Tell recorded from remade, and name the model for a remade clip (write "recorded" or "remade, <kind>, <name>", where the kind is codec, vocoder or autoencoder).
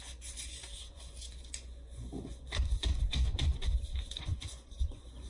remade, vocoder, Vocos